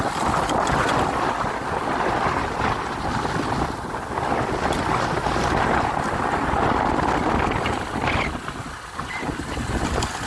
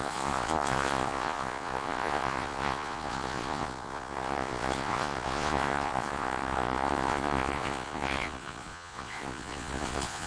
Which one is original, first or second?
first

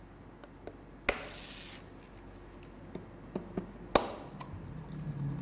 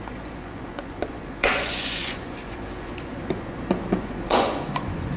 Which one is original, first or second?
first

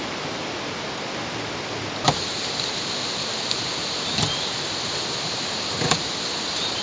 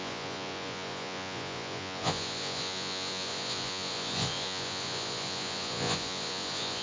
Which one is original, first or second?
first